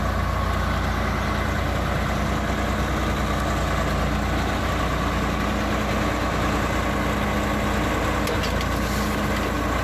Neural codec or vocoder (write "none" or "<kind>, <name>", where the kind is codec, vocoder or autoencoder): none